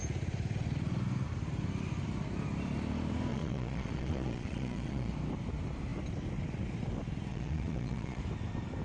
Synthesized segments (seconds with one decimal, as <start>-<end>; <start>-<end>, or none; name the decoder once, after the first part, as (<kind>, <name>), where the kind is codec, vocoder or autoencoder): 3.3-5.1 (vocoder, Vocos); 7.3-8.2